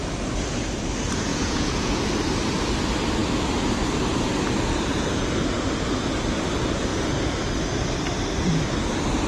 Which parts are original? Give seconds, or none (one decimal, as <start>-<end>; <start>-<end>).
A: 0.0-1.3; 2.1-9.3